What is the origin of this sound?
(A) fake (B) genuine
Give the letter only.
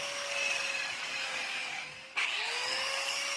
A